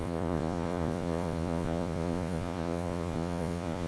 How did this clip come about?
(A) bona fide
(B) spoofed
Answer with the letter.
B